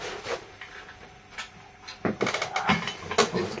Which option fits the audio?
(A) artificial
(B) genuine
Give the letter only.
B